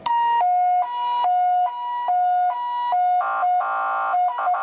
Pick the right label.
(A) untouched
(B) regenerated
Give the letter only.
A